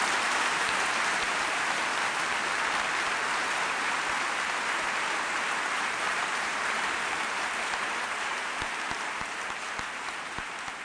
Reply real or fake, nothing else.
fake